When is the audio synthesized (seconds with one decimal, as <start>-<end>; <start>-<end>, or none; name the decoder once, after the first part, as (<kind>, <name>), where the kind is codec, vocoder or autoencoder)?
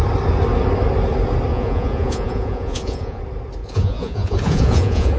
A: 1.5-3.2 (vocoder, Vocos); 3.6-5.2